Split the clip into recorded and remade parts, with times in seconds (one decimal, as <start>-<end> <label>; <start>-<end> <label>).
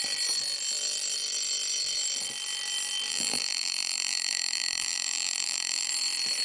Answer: 0.0-3.1 recorded; 3.1-5.9 remade; 5.9-6.4 recorded